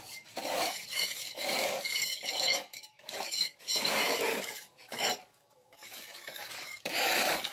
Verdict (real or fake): fake